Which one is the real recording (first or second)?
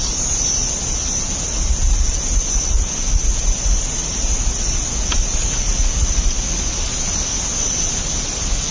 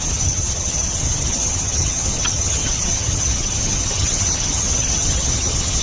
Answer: first